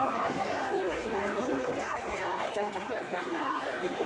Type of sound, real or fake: fake